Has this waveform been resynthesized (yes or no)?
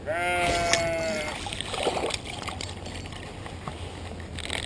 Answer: no